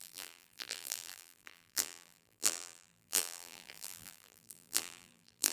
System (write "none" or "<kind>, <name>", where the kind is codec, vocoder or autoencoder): vocoder, BigVGAN v2